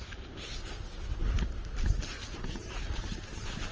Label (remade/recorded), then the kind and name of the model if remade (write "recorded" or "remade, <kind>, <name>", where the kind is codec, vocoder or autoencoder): recorded